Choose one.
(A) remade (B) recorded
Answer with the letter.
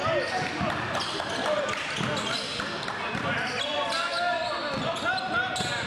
B